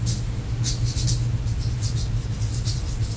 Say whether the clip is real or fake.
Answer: real